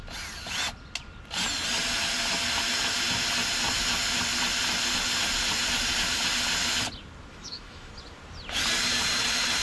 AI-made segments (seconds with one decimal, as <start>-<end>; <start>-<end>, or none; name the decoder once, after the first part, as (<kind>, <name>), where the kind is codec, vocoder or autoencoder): 7.3-7.9 (autoencoder, DAC-VAE)